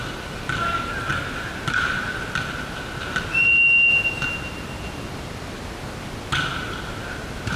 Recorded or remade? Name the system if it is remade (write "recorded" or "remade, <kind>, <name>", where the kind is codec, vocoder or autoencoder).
recorded